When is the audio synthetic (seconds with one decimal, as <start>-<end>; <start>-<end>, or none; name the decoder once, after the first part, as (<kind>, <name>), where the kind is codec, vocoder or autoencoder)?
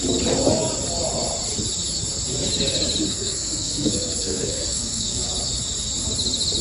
3.1-5.3 (codec, SNAC)